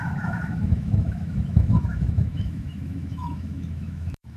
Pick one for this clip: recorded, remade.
remade